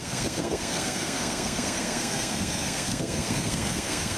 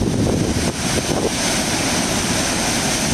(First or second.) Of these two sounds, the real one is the second